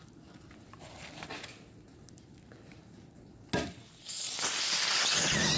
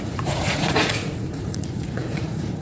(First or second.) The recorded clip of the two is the first